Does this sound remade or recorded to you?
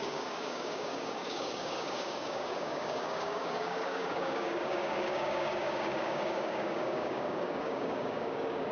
remade